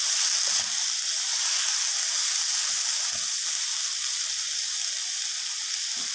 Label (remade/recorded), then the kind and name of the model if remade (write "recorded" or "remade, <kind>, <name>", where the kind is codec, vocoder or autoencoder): recorded